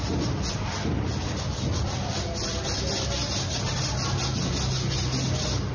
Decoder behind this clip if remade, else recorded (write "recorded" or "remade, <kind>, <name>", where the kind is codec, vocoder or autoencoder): recorded